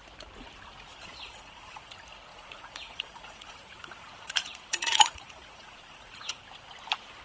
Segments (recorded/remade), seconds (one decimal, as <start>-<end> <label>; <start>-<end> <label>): 0.0-0.9 recorded; 0.9-1.9 remade; 1.9-2.3 recorded; 2.3-6.4 remade; 6.4-7.2 recorded